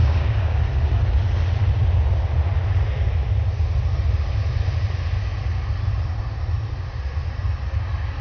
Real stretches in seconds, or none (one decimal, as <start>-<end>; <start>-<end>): 0.6-8.2